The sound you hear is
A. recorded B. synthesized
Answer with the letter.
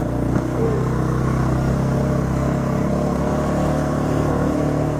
B